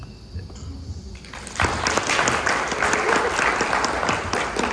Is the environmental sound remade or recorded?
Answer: recorded